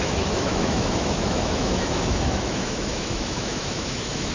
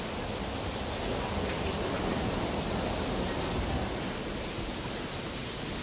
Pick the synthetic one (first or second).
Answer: first